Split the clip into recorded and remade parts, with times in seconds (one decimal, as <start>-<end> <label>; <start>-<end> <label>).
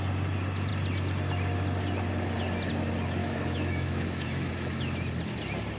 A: 0.0-3.2 recorded; 3.2-4.5 remade; 4.5-5.8 recorded